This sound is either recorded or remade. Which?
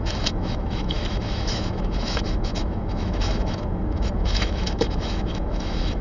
remade